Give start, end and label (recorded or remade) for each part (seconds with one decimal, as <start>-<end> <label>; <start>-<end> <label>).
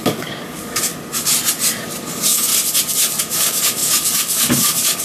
0.0-0.9 remade; 0.9-2.0 recorded; 2.0-2.5 remade; 2.5-3.2 recorded; 3.2-5.0 remade